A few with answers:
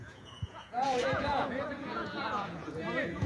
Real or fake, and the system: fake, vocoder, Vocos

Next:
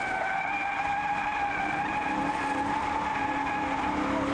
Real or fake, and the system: real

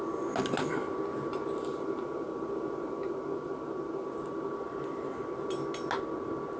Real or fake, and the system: real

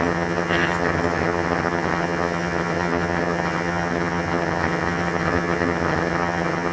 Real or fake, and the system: fake, vocoder, HiFi-GAN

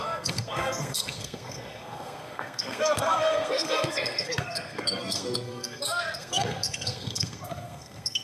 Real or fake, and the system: fake, codec, SNAC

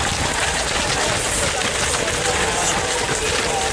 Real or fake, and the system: real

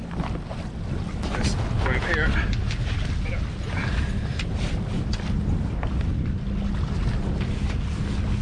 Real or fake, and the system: real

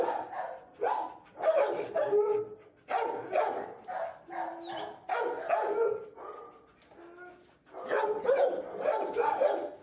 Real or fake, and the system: real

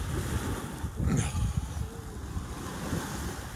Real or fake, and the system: real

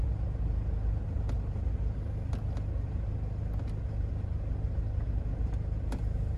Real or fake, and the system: real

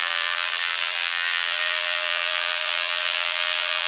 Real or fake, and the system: fake, vocoder, BigVGAN v2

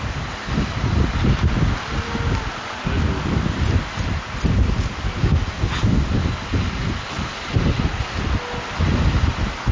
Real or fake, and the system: real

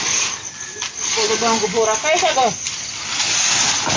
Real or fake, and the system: real